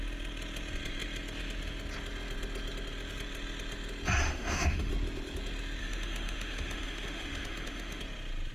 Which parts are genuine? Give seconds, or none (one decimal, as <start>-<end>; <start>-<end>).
0.0-4.3; 4.9-5.8; 8.0-8.5